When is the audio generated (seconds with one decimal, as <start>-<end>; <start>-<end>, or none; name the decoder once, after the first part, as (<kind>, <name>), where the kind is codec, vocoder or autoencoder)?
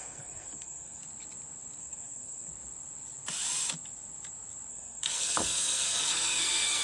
0.0-1.0 (codec, SNAC); 1.8-2.5; 4.7-6.8